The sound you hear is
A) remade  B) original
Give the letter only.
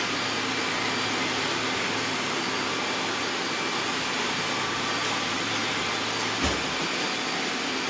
B